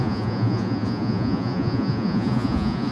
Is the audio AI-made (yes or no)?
yes